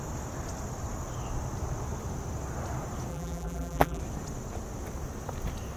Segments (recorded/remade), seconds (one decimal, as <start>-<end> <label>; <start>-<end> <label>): 0.0-3.1 recorded; 3.1-4.0 remade; 4.0-5.8 recorded